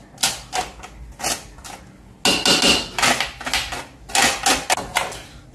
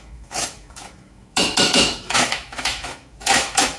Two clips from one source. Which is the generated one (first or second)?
second